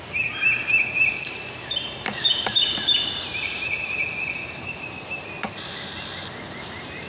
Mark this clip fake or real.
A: fake